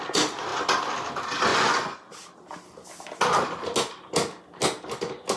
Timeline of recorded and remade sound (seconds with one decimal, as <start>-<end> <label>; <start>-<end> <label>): 0.0-1.5 recorded; 1.5-2.1 remade; 2.1-5.4 recorded